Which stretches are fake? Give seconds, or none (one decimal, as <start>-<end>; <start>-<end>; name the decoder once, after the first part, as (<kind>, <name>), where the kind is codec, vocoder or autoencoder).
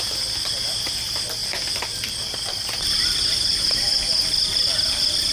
1.4-2.1 (vocoder, BigVGAN v2)